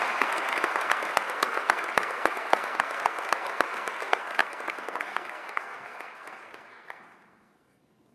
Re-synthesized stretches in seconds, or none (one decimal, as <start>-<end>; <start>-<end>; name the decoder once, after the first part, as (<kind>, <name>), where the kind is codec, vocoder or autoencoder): 0.0-8.1 (codec, SNAC)

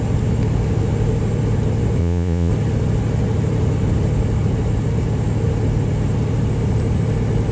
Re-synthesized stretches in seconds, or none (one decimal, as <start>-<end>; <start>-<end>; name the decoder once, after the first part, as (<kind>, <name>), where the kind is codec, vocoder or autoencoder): 2.0-2.5 (vocoder, Vocos)

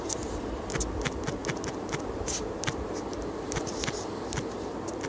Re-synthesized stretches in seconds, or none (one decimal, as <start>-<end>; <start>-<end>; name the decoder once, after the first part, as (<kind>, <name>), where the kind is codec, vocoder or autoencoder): none

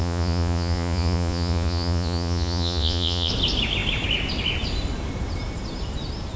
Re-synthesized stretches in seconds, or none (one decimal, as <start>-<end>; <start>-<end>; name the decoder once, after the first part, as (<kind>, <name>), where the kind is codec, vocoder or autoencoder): 0.0-3.3 (vocoder, Vocos)